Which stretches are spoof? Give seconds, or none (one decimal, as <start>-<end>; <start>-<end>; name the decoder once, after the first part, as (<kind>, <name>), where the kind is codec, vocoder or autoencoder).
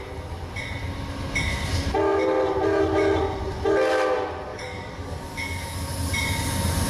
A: 4.5-5.9 (codec, DAC)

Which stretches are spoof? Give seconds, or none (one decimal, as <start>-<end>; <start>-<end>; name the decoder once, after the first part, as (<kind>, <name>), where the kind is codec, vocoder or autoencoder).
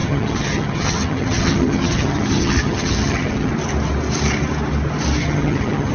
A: 0.0-3.5 (vocoder, HiFi-GAN); 5.2-5.9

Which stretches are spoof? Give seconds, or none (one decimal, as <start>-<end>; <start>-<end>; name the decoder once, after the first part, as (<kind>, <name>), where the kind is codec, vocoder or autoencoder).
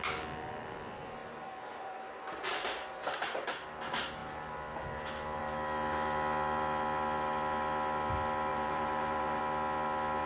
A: 1.2-3.5 (vocoder, BigVGAN v2); 8.5-9.4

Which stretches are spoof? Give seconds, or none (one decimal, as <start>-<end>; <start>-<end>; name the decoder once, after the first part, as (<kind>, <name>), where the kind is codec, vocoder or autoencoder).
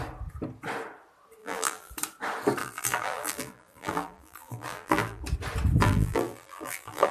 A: 1.4-1.9 (vocoder, BigVGAN v2); 2.6-5.2; 5.8-7.1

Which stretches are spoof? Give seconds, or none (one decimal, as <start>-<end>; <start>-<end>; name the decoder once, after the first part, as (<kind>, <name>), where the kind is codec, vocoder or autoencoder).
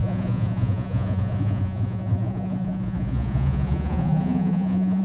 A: 0.0-5.0 (vocoder, Vocos)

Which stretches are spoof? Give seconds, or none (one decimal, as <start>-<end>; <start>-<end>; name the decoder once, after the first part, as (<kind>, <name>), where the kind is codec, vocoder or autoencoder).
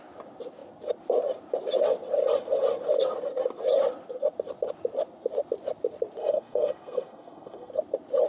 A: 6.2-7.7 (codec, SNAC)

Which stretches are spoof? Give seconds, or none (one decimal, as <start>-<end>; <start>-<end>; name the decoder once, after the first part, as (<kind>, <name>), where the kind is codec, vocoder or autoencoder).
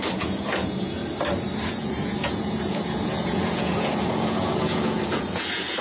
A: 0.0-1.0 (vocoder, Vocos); 1.7-5.8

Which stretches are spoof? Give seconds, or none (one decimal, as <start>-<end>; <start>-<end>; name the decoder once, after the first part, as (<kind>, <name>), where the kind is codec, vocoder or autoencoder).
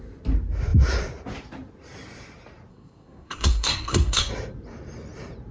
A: 2.7-4.3 (codec, SNAC)